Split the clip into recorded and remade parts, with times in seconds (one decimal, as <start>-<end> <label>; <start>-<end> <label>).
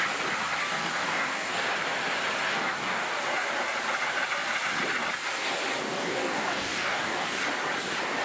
0.0-0.6 recorded; 0.6-1.6 remade; 1.6-2.5 recorded; 2.5-3.2 remade; 3.2-5.8 recorded; 5.8-7.4 remade; 7.4-8.2 recorded